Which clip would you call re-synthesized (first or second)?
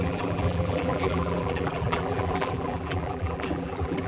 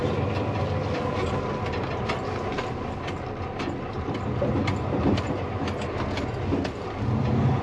first